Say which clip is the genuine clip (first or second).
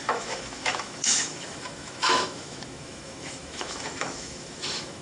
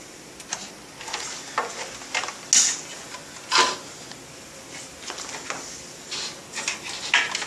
second